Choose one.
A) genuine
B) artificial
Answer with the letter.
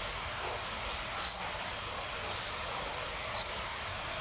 A